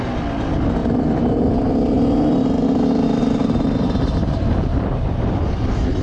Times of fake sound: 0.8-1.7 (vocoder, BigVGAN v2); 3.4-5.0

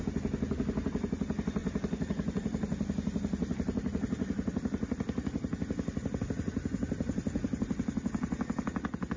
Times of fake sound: 1.6-6.2 (vocoder, BigVGAN v2)